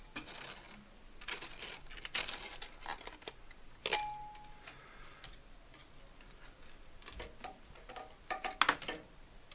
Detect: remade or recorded recorded